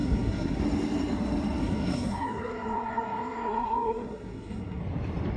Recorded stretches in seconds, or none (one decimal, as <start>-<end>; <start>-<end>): 0.6-1.6; 4.8-5.4